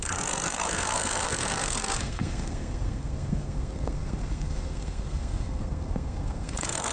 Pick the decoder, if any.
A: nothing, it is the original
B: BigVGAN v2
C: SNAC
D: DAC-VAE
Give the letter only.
C